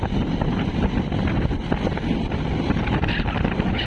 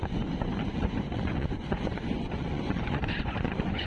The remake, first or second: second